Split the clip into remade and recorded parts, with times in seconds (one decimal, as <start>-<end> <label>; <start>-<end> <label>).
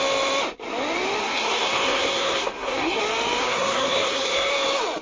0.0-1.2 recorded; 1.2-3.0 remade; 3.0-3.4 recorded; 3.4-4.5 remade; 4.5-5.0 recorded